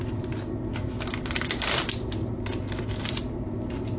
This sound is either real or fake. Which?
real